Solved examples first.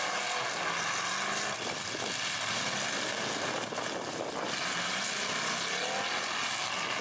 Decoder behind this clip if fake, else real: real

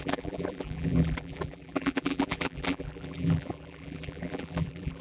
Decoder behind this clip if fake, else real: fake, vocoder, BigVGAN v2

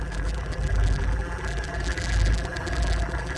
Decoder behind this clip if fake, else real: fake, vocoder, BigVGAN v2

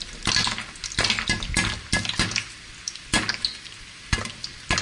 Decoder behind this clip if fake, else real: real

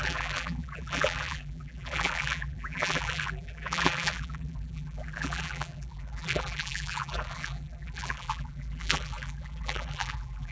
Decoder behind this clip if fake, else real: fake, vocoder, BigVGAN v2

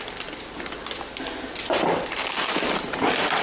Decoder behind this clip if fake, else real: fake, vocoder, BigVGAN v2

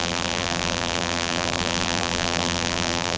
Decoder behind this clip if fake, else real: fake, vocoder, BigVGAN v2